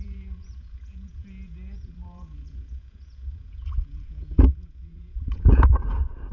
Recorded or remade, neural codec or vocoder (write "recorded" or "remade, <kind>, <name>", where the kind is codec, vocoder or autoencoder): remade, vocoder, Vocos